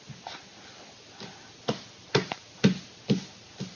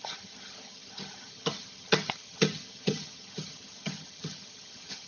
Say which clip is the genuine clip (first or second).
first